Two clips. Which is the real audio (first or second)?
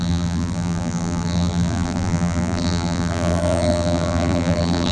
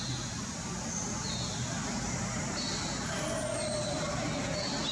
second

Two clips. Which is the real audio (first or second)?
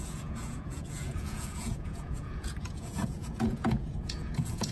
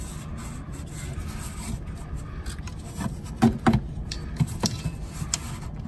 second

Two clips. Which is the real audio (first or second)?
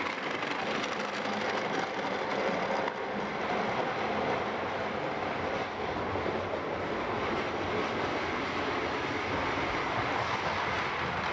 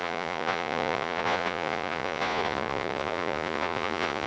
first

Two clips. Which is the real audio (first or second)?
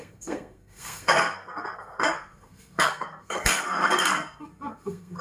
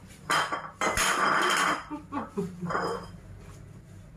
second